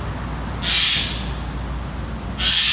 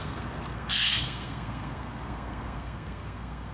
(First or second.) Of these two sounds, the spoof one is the second